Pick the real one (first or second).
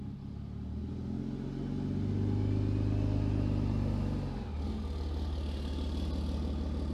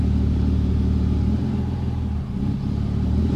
first